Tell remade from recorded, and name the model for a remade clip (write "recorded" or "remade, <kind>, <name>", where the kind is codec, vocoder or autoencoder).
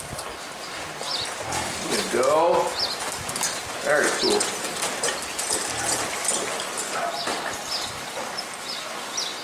recorded